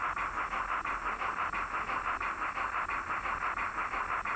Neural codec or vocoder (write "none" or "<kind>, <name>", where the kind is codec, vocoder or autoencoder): none